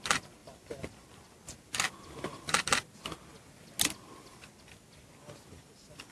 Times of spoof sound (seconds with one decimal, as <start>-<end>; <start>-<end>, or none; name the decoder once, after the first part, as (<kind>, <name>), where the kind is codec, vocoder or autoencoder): none